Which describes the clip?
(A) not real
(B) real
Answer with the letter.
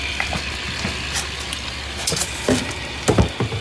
B